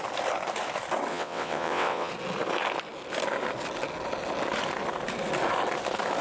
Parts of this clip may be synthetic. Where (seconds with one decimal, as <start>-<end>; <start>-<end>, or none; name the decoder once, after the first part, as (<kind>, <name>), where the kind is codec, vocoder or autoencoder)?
1.1-2.1 (vocoder, WaveNeXt)